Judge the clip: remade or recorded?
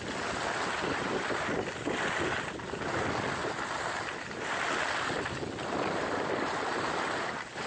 recorded